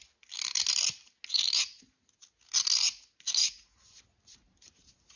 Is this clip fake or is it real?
real